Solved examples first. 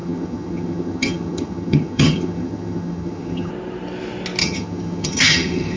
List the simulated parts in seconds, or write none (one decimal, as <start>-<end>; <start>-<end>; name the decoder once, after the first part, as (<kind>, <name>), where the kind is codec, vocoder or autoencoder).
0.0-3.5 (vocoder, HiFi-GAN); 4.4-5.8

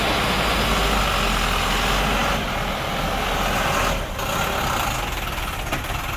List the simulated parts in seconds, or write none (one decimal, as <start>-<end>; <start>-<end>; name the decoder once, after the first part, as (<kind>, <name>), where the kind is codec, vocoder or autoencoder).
none

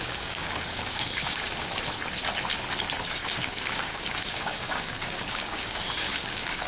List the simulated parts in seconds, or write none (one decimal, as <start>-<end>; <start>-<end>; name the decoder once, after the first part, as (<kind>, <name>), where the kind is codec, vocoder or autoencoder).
0.0-1.5 (codec, DAC); 3.0-6.7

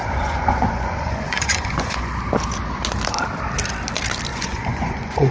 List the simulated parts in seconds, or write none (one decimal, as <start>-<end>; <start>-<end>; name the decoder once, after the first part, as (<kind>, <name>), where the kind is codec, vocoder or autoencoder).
0.0-2.1 (vocoder, Vocos); 4.3-5.3

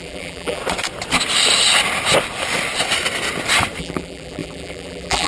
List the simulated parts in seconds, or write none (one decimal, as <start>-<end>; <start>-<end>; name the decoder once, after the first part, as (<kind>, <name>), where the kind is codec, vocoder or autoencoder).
0.0-0.6 (vocoder, BigVGAN v2); 3.8-5.3

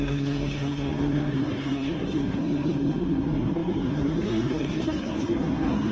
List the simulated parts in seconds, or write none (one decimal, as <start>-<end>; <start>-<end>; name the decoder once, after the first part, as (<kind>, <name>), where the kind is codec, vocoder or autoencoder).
0.0-5.9 (codec, SNAC)